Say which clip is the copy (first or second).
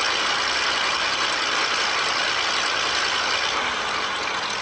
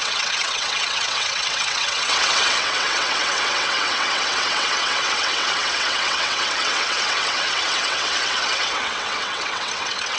second